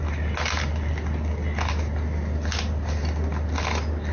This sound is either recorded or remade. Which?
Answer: recorded